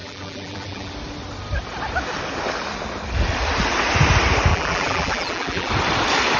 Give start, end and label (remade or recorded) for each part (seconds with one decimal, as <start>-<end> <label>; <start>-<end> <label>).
0.0-0.9 remade; 0.9-4.5 recorded; 4.5-5.7 remade; 5.7-6.4 recorded